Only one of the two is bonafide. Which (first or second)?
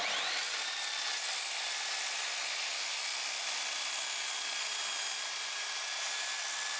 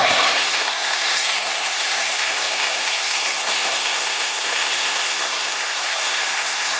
first